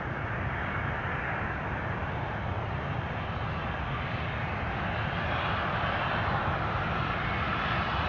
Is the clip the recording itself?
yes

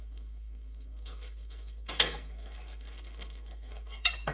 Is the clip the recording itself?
no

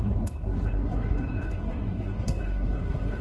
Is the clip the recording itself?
no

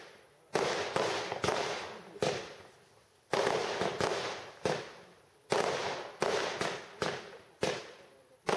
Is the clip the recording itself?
yes